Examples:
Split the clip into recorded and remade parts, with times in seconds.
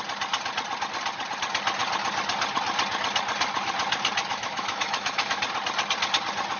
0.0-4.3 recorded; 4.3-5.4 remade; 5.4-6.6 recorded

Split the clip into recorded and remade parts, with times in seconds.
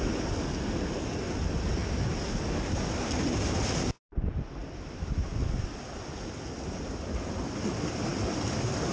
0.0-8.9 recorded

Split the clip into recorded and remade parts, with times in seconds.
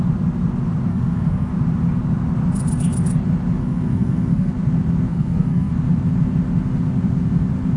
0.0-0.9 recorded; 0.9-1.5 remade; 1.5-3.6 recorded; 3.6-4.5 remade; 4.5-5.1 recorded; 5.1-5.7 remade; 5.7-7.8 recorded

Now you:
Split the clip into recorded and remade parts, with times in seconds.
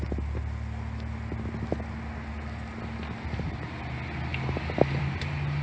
0.0-5.6 recorded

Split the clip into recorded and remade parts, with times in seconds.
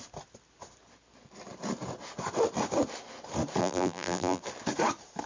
0.0-3.6 recorded; 3.6-4.4 remade; 4.4-5.3 recorded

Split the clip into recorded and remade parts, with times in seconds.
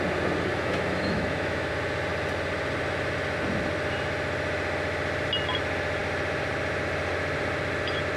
0.0-0.5 recorded; 0.5-1.7 remade; 1.7-8.2 recorded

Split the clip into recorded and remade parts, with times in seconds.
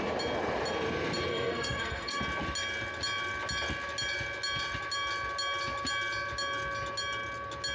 0.0-1.3 recorded; 1.3-2.2 remade; 2.2-7.7 recorded